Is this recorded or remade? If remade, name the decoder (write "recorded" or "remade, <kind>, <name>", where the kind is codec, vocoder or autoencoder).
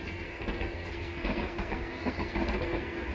remade, codec, SNAC